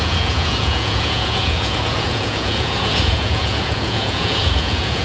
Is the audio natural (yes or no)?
no